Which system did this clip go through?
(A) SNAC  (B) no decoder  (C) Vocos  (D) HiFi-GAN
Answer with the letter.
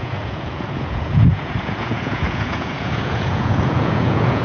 C